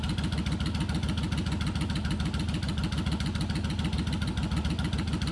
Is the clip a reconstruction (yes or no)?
no